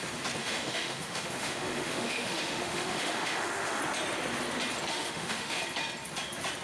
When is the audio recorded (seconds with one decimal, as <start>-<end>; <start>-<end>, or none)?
0.0-0.4; 3.8-4.9; 5.6-6.6